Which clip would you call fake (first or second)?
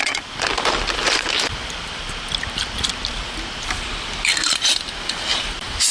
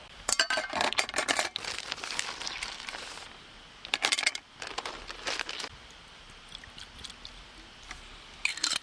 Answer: first